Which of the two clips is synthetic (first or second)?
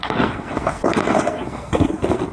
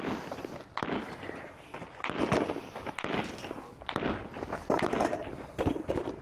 first